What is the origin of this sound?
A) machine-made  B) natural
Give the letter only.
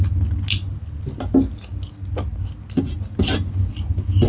B